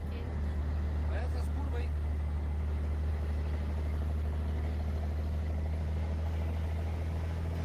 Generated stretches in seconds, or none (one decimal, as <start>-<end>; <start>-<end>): none